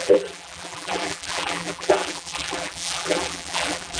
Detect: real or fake fake